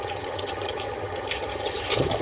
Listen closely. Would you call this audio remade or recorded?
remade